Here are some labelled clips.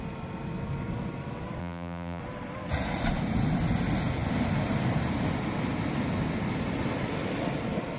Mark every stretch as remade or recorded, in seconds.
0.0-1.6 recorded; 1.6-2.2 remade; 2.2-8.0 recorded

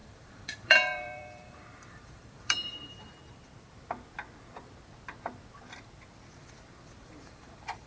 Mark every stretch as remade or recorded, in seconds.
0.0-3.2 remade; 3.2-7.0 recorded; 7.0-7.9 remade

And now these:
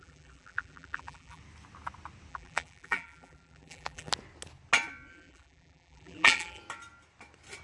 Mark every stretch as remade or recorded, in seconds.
0.0-1.4 remade; 1.4-2.3 recorded; 2.3-4.1 remade; 4.1-5.1 recorded; 5.1-6.6 remade; 6.6-7.6 recorded